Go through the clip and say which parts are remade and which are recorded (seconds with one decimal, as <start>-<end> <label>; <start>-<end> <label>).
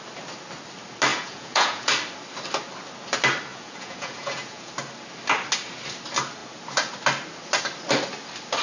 0.0-1.1 recorded; 1.1-1.9 remade; 1.9-3.5 recorded; 3.5-4.7 remade; 4.7-8.6 recorded